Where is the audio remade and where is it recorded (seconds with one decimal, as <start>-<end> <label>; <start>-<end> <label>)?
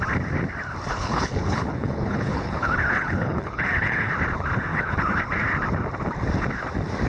0.0-0.9 recorded; 0.9-4.1 remade; 4.1-4.7 recorded; 4.7-5.2 remade; 5.2-7.1 recorded